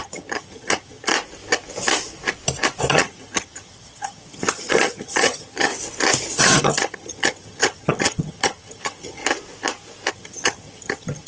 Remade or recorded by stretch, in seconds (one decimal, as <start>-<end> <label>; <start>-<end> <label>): 0.0-1.1 remade; 1.1-2.9 recorded; 2.9-5.7 remade; 5.7-6.4 recorded; 6.4-9.2 remade; 9.2-10.1 recorded; 10.1-11.3 remade